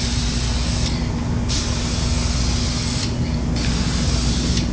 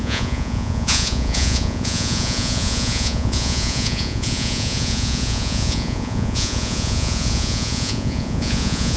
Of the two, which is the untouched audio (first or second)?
first